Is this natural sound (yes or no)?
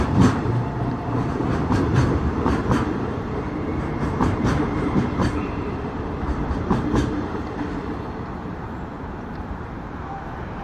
no